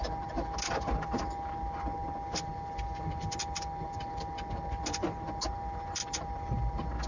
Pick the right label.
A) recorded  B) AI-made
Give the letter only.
A